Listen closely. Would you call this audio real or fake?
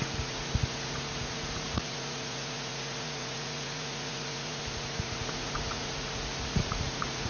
fake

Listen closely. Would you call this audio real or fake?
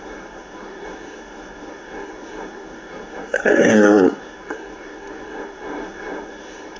fake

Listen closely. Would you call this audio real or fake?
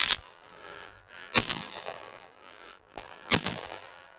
fake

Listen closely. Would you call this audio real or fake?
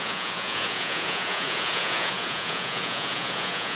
fake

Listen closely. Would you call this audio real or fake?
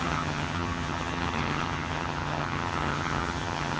fake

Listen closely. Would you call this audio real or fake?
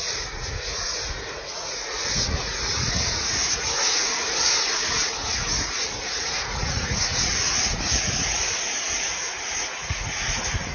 fake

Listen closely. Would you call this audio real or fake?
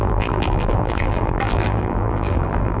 fake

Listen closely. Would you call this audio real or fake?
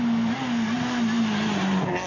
real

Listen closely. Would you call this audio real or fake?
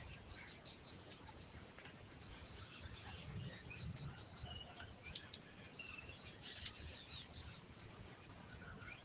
fake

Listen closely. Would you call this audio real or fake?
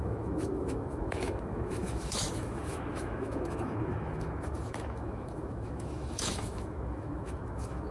fake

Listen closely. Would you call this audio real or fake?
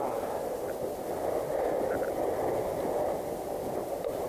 real